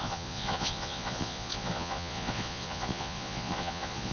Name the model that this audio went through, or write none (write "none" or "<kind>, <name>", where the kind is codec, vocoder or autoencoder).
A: vocoder, Vocos